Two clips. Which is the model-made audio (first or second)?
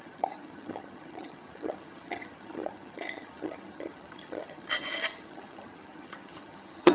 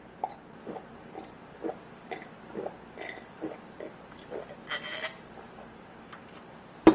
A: first